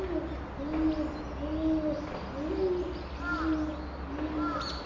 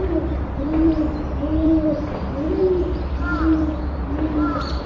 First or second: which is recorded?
first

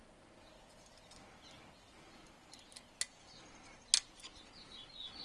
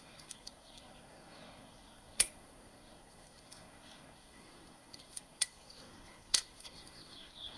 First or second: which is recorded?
first